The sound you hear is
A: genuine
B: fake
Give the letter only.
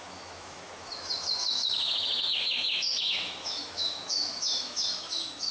B